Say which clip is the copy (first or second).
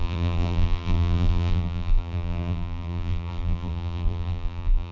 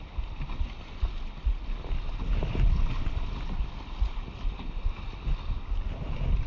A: first